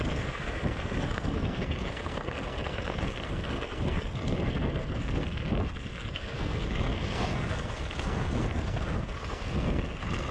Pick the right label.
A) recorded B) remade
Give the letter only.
B